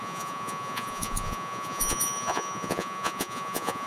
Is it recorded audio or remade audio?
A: remade